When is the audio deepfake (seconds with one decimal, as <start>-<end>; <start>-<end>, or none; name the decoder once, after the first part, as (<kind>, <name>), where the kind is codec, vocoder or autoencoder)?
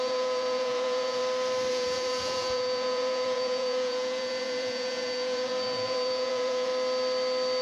0.0-1.2 (vocoder, Vocos); 1.7-6.7